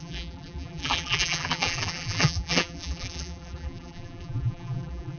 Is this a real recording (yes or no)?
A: no